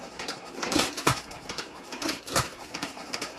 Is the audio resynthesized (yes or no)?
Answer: yes